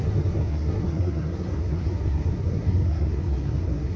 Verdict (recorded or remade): remade